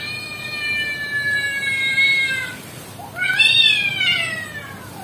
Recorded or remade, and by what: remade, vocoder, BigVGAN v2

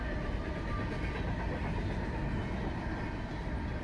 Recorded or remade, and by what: recorded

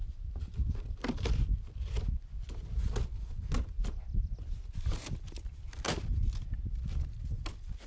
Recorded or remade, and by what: recorded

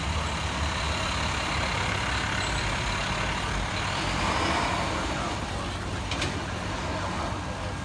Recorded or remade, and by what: recorded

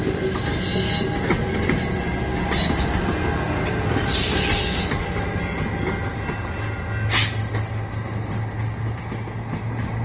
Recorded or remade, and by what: recorded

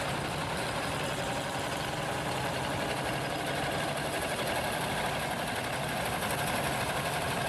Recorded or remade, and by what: recorded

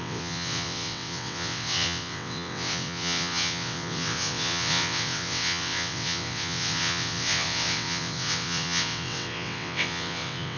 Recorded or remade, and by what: remade, vocoder, WaveNeXt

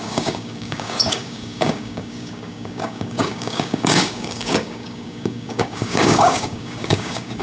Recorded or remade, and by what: remade, codec, DAC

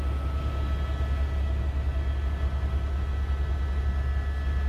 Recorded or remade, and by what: recorded